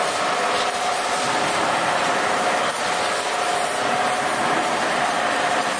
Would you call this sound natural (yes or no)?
yes